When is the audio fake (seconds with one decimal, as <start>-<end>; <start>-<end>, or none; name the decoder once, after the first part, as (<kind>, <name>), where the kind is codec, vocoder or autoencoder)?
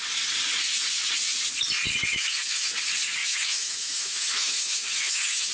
2.1-2.7 (autoencoder, DAC-VAE); 3.2-5.5